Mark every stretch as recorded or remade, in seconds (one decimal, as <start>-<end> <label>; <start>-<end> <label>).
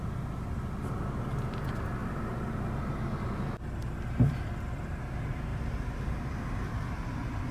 0.0-2.0 recorded; 2.0-2.5 remade; 2.5-3.8 recorded; 3.8-4.5 remade; 4.5-5.5 recorded; 5.5-7.5 remade